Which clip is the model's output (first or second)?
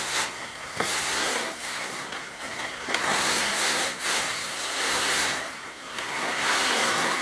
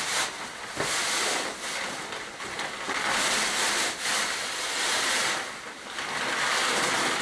first